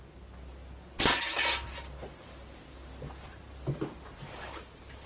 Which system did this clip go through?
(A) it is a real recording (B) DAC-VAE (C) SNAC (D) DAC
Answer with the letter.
A